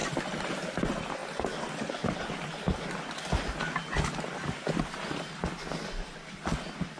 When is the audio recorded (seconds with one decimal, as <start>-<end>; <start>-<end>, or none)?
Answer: 0.0-7.0